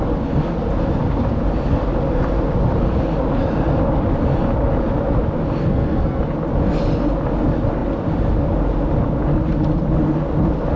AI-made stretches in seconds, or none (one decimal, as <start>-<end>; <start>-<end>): 5.6-6.2